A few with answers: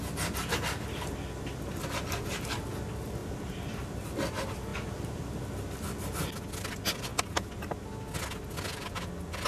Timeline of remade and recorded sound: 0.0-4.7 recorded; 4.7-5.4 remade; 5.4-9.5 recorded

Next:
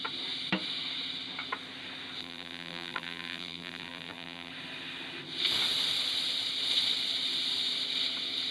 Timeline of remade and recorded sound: 0.0-2.2 recorded; 2.2-4.5 remade; 4.5-8.5 recorded

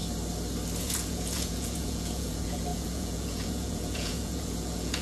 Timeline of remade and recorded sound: 0.0-0.8 recorded; 0.8-5.0 remade

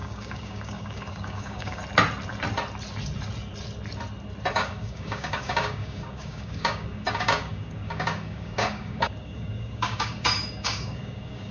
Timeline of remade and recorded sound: 0.0-1.8 remade; 1.8-4.5 recorded; 4.5-11.5 remade

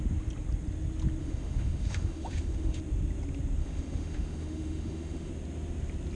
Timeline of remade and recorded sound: 0.0-1.2 recorded; 1.2-2.8 remade; 2.8-3.6 recorded; 3.6-5.3 remade; 5.3-6.2 recorded

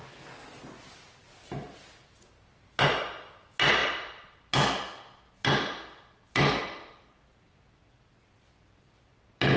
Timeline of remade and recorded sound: 0.0-9.6 recorded